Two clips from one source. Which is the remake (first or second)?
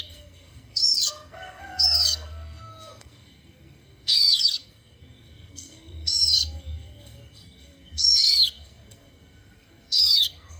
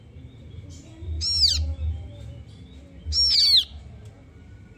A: first